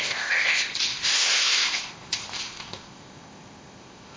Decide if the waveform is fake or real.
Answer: fake